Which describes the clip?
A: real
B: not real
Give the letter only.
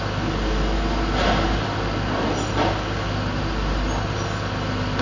A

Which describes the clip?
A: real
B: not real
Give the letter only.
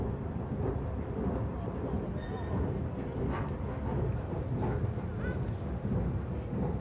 A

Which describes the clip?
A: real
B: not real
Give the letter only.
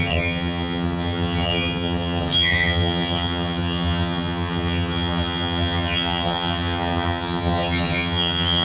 B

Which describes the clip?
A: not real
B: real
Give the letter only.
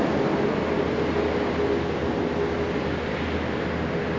B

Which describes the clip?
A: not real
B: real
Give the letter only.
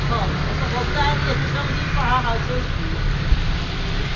B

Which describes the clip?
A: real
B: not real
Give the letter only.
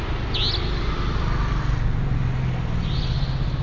A